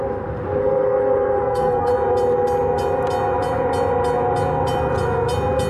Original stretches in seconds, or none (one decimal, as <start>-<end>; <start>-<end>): 0.0-0.6; 1.9-5.7